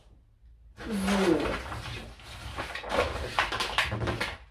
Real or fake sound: real